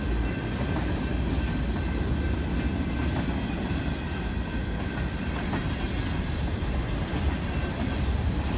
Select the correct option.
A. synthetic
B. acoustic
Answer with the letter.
B